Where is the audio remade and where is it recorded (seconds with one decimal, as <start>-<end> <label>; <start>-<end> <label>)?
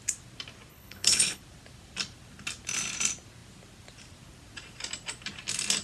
0.0-0.7 recorded; 0.7-1.4 remade; 1.4-5.8 recorded